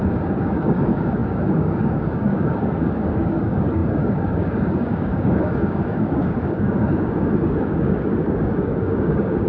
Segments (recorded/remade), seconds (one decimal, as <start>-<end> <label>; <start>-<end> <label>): 0.0-9.5 remade